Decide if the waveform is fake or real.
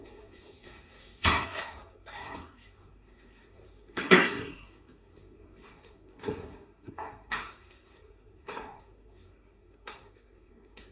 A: fake